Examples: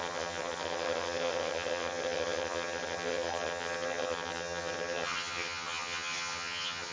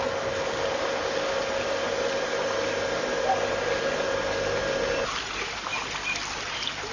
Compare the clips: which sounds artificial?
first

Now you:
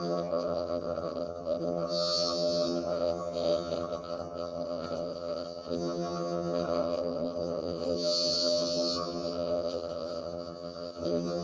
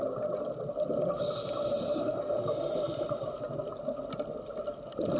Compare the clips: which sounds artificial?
first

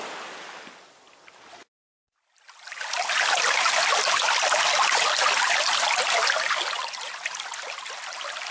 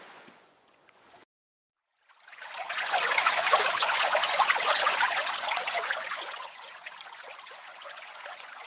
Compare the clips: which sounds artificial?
second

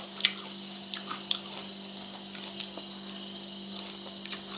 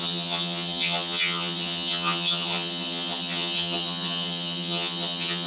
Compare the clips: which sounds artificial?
second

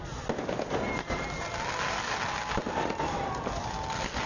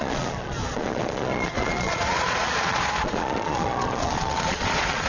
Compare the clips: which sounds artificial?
second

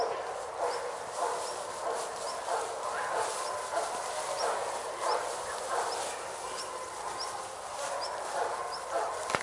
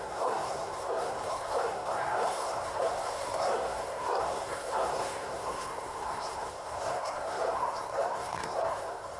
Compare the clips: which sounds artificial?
second